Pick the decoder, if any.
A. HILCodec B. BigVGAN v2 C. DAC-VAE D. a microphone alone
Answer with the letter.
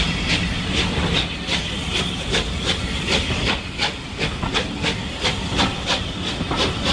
D